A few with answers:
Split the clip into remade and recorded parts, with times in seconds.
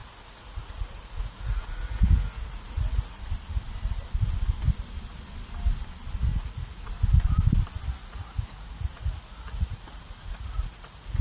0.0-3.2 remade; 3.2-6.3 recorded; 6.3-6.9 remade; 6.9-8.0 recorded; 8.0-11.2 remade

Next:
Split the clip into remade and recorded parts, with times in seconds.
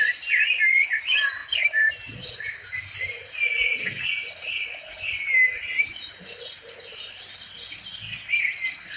0.0-9.0 recorded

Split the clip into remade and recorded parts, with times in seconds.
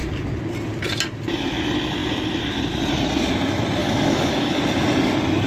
0.0-3.8 recorded; 3.8-4.6 remade; 4.6-5.5 recorded